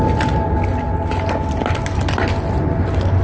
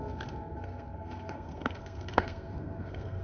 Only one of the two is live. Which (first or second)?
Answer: first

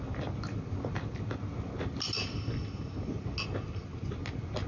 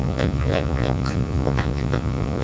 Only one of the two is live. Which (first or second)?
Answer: first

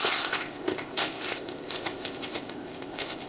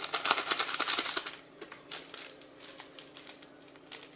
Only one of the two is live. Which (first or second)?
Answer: second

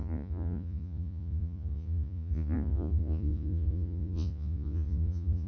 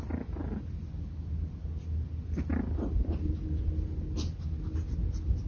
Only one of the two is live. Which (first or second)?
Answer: second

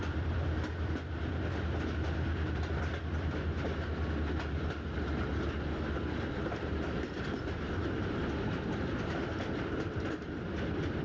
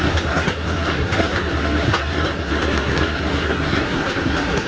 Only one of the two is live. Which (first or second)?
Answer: first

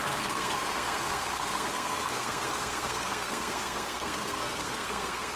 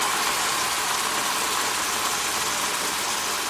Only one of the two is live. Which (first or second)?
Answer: second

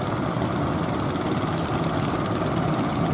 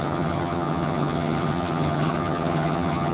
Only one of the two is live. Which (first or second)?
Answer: first